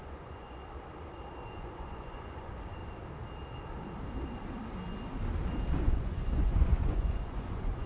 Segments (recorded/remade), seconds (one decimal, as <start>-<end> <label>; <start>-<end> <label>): 0.0-0.6 remade; 0.6-1.5 recorded; 1.5-2.8 remade; 2.8-5.8 recorded; 5.8-7.9 remade